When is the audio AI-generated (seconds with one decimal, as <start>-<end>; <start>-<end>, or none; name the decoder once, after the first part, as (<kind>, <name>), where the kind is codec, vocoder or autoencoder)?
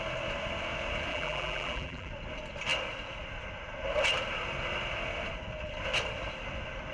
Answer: 1.1-2.1 (vocoder, BigVGAN v2)